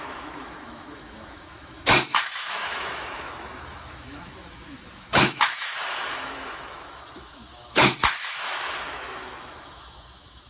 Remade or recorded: remade